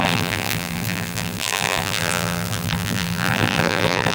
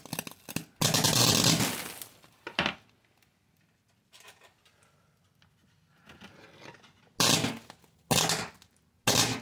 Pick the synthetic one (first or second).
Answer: first